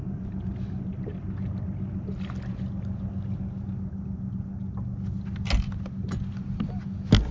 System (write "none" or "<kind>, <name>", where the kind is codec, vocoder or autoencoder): none